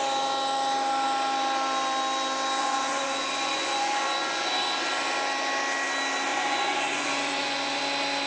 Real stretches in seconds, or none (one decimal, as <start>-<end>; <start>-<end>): 0.0-2.6; 4.5-6.3; 7.8-8.3